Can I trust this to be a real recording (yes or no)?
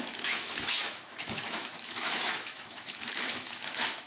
no